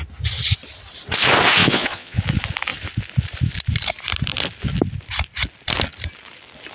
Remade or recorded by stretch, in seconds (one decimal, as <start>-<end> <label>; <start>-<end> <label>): 0.0-1.6 recorded; 1.6-2.2 remade; 2.2-6.7 recorded